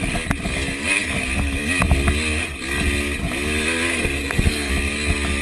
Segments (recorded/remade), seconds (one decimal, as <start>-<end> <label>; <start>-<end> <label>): 0.0-3.9 recorded; 3.9-4.7 remade; 4.7-5.4 recorded